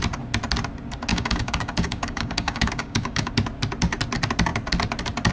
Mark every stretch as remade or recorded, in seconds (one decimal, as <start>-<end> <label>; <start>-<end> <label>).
0.0-1.1 recorded; 1.1-3.3 remade; 3.3-5.3 recorded